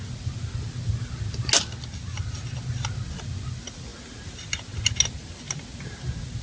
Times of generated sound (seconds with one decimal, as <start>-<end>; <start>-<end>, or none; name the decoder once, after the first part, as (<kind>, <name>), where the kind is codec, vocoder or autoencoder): none